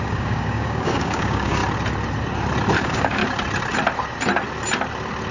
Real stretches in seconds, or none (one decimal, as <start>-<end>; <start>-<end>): 1.6-2.8; 3.2-5.3